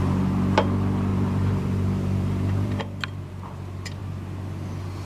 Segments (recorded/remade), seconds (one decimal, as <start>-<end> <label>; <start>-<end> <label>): 0.0-1.1 recorded; 1.1-2.8 remade; 2.8-5.1 recorded